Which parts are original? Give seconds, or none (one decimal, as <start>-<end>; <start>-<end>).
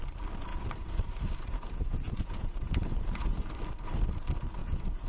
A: 0.0-0.5; 3.5-4.6